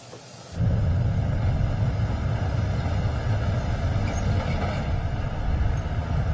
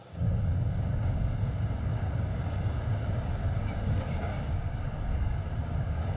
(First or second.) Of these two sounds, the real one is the first